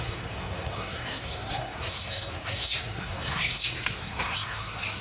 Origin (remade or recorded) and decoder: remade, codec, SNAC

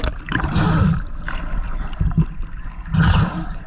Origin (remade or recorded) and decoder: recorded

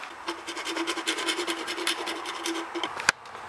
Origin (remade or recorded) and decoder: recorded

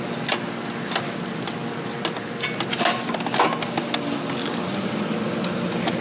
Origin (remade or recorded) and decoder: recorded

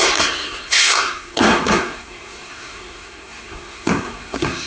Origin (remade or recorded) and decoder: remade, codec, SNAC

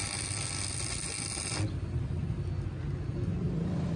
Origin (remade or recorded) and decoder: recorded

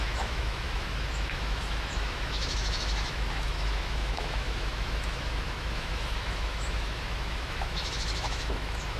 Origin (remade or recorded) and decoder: remade, autoencoder, DAC-VAE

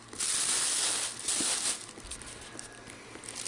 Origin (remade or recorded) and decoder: recorded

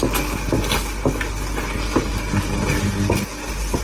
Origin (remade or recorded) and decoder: recorded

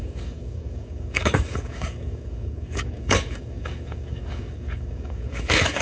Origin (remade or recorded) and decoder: remade, codec, DAC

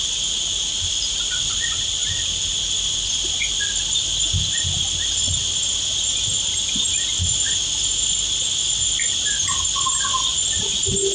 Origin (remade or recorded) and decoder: recorded